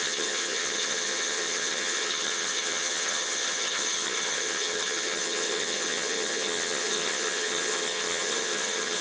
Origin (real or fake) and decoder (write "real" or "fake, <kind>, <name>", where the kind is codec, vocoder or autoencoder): fake, vocoder, HiFi-GAN